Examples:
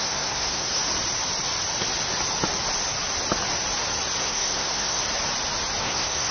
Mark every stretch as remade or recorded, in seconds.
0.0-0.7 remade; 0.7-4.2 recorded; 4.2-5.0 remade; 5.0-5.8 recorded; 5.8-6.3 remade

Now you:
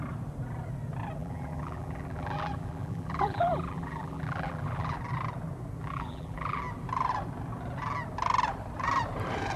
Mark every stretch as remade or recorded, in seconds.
0.0-1.2 recorded; 1.2-5.0 remade; 5.0-5.8 recorded; 5.8-6.6 remade; 6.6-9.6 recorded

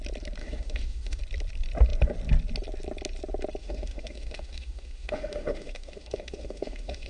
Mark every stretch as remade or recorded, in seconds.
0.0-0.4 recorded; 0.4-1.2 remade; 1.2-3.6 recorded; 3.6-7.1 remade

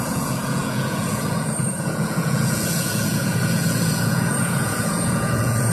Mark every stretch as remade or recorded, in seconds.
0.0-5.7 remade